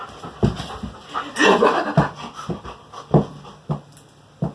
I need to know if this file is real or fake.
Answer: real